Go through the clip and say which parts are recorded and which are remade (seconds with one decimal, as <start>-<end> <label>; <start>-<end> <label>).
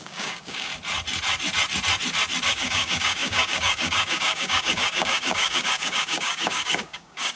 0.0-0.7 remade; 0.7-2.5 recorded; 2.5-7.4 remade